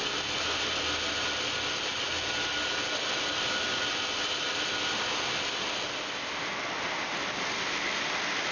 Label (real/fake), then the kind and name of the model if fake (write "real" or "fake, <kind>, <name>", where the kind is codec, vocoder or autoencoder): real